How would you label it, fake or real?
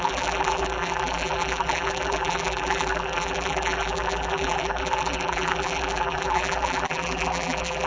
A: fake